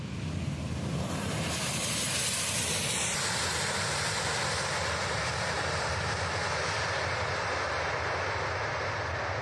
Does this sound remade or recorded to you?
recorded